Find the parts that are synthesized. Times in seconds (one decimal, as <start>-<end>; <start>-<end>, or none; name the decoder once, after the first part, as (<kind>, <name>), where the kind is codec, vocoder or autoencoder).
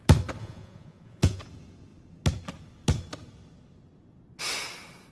0.4-1.4 (vocoder, Vocos)